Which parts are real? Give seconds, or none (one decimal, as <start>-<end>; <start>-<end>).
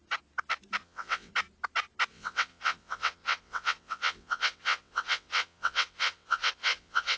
0.0-0.8; 1.3-2.1